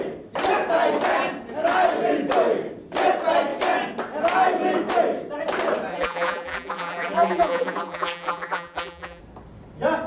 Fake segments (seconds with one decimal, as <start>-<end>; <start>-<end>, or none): 5.9-9.2